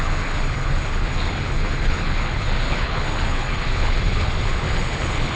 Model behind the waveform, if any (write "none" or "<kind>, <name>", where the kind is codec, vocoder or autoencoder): codec, HILCodec